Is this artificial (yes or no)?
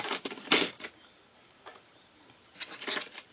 yes